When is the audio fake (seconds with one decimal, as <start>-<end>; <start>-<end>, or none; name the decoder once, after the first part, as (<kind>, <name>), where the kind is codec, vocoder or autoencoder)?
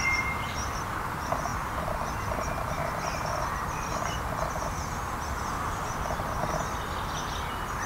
none